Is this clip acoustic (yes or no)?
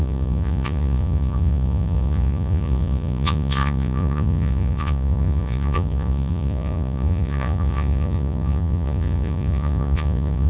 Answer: no